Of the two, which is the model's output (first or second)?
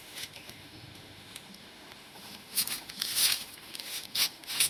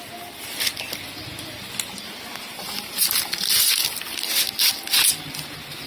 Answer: first